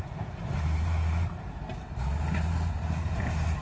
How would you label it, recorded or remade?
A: remade